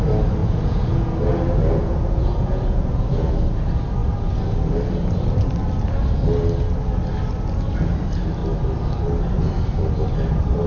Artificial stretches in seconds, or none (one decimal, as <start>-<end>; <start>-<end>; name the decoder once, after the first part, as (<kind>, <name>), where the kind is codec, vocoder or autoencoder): 0.4-3.3 (vocoder, Vocos)